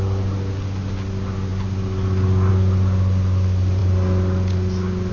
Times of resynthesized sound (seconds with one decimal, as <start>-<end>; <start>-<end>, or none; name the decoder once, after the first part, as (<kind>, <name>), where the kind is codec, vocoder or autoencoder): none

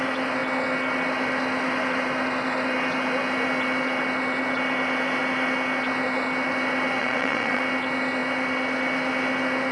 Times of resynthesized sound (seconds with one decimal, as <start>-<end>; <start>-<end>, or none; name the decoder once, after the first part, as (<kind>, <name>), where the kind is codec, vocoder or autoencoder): 7.0-7.6 (vocoder, Vocos)

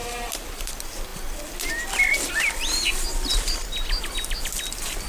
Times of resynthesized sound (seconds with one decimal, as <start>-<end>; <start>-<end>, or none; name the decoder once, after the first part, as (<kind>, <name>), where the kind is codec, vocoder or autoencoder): 0.0-0.7 (vocoder, BigVGAN v2)

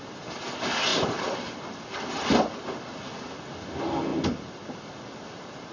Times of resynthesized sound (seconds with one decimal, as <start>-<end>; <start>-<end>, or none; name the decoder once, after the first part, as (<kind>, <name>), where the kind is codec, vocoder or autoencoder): none

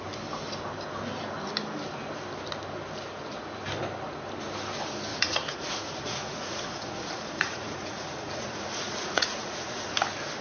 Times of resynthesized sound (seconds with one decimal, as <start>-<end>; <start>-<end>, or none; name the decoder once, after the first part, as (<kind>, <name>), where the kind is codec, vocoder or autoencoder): 5.1-9.8 (vocoder, Vocos)

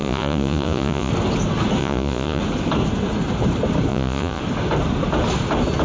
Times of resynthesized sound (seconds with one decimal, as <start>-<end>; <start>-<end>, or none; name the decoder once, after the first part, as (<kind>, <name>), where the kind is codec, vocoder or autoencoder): 0.0-1.1 (vocoder, Vocos); 1.8-2.4; 3.9-4.4